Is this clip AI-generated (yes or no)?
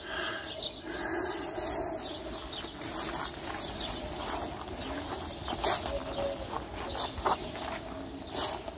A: no